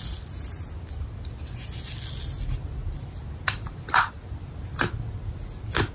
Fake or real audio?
real